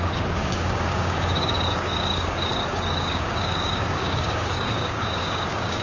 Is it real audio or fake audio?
fake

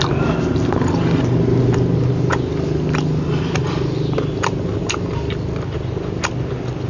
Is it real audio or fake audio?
real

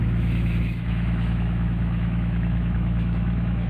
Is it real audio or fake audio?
fake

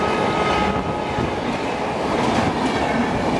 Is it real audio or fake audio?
real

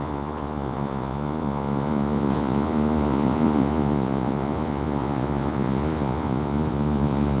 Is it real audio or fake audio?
fake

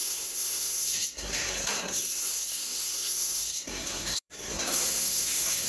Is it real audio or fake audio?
fake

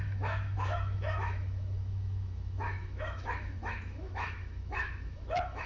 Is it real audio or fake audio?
fake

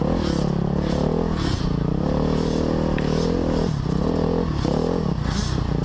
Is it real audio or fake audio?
real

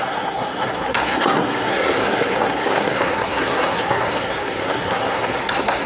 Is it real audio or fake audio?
fake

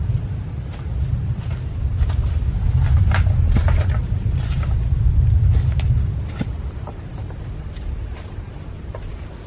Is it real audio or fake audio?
real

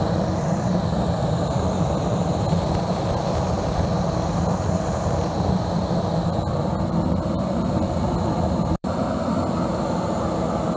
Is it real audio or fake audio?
fake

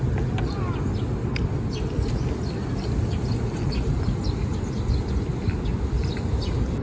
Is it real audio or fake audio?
real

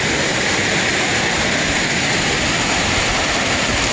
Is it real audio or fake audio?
real